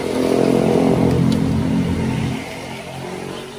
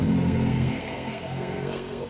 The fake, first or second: second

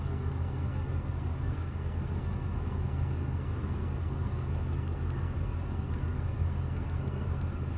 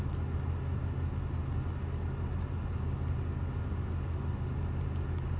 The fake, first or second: first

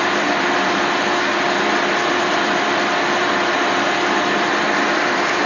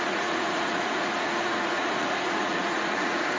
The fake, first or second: second